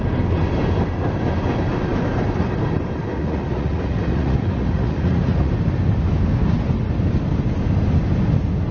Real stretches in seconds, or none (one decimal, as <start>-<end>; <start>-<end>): 0.0-3.1; 5.5-8.7